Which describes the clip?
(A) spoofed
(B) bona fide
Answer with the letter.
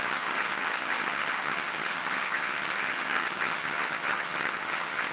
A